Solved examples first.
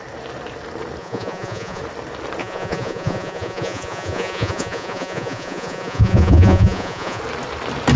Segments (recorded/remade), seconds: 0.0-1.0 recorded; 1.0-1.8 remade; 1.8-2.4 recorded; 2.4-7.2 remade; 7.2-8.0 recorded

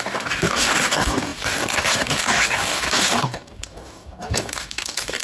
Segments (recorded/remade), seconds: 0.0-5.2 remade

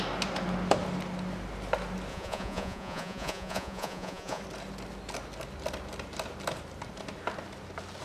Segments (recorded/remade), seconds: 0.0-2.1 recorded; 2.1-4.4 remade; 4.4-8.0 recorded